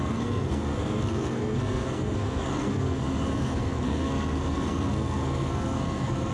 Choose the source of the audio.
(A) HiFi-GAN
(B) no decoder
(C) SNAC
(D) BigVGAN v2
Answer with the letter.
C